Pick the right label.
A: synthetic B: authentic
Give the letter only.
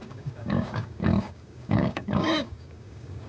A